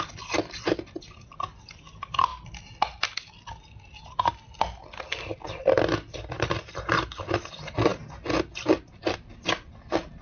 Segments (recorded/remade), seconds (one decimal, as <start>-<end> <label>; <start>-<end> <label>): 0.0-10.2 recorded